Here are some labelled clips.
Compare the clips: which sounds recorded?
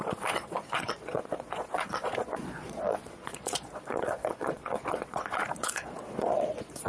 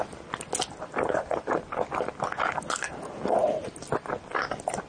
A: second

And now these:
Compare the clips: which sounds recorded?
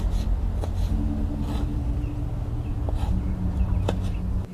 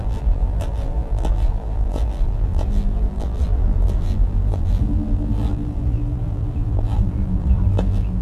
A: first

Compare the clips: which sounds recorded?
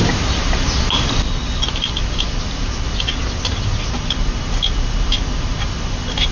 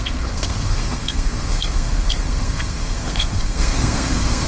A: first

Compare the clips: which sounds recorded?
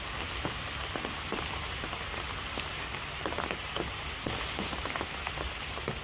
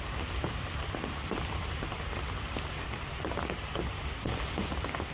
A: first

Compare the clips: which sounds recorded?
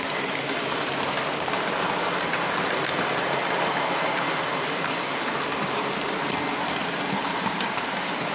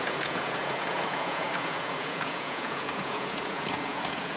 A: first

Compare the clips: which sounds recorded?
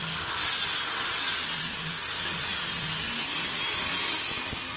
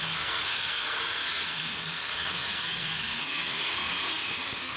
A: first